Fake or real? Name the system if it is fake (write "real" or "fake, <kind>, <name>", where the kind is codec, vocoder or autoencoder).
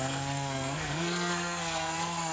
fake, codec, SNAC